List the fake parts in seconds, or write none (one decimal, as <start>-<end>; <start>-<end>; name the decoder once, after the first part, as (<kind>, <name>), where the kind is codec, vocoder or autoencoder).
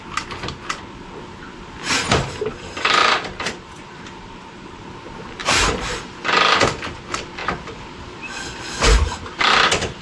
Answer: 3.0-4.8 (vocoder, BigVGAN v2); 5.4-6.1